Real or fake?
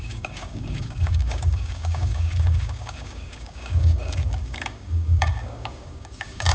fake